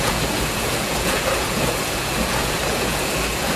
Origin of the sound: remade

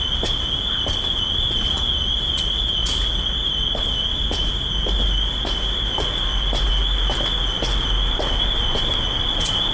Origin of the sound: recorded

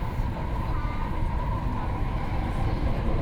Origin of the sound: remade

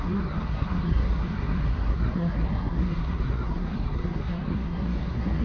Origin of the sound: remade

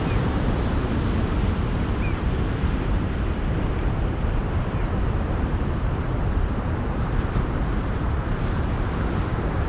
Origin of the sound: remade